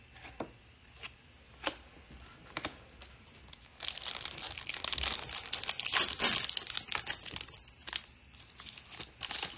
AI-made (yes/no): no